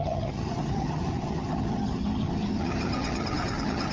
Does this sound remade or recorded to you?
remade